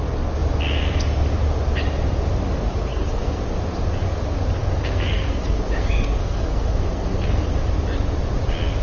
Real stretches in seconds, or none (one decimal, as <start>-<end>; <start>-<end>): 0.0-2.9; 3.4-4.6; 7.6-8.8